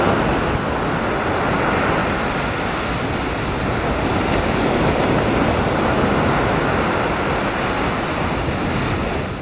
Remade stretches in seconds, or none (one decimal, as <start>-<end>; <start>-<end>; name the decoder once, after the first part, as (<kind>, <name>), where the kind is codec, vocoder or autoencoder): none